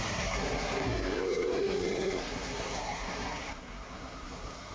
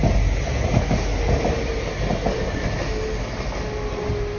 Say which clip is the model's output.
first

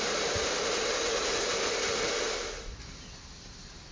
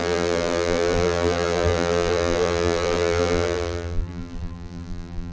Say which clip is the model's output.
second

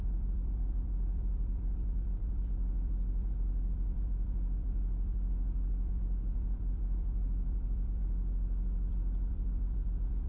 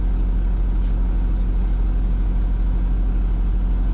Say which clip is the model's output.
first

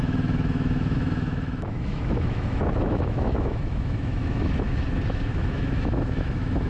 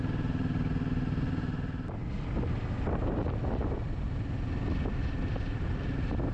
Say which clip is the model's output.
first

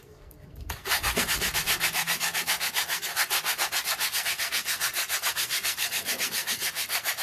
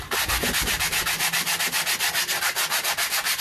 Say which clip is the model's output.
first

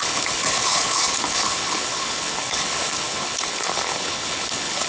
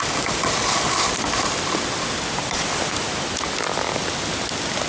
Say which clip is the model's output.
first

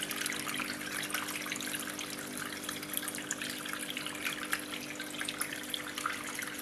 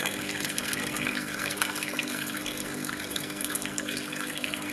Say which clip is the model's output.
second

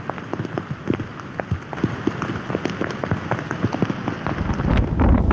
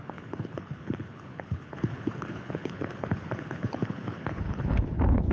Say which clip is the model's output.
second